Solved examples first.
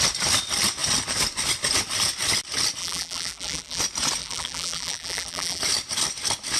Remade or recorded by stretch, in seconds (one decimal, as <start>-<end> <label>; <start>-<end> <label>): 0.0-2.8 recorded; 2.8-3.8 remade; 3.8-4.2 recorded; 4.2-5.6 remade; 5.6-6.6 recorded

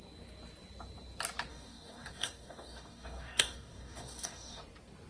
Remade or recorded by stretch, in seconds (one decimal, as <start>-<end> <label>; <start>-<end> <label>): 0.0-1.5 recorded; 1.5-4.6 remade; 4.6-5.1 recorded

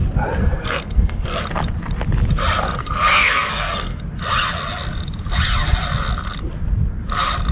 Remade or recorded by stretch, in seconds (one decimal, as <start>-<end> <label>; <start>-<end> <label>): 0.0-0.4 recorded; 0.4-1.4 remade; 1.4-2.8 recorded; 2.8-4.0 remade; 4.0-7.5 recorded

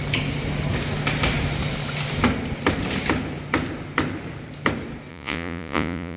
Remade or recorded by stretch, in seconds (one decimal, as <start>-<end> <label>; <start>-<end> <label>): 0.0-5.1 recorded; 5.1-6.2 remade

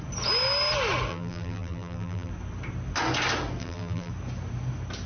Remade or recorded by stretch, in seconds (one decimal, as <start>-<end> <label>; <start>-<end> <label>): 0.0-1.1 recorded; 1.1-2.3 remade; 2.3-3.6 recorded; 3.6-4.1 remade; 4.1-5.1 recorded